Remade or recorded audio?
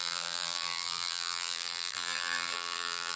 remade